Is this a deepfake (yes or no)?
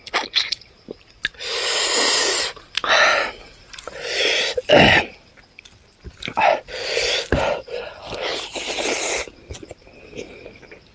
no